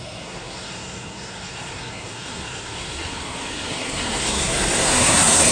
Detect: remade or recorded remade